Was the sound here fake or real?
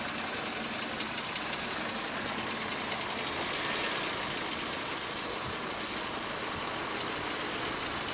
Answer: real